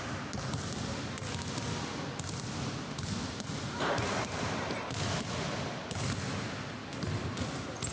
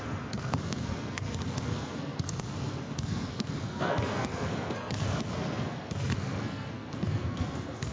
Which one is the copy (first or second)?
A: second